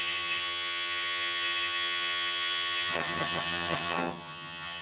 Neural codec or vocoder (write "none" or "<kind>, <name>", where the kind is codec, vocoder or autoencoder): vocoder, HiFi-GAN